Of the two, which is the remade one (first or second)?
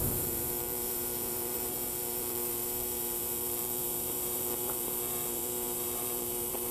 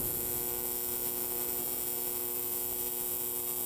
first